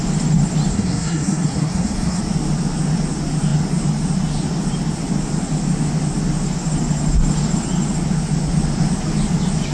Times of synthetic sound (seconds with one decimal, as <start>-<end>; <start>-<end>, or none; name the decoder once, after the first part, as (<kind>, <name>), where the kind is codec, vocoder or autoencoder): 0.7-2.2 (codec, SNAC)